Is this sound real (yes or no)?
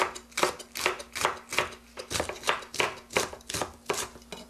yes